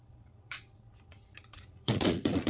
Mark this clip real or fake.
fake